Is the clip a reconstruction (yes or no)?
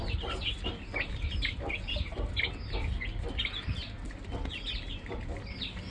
no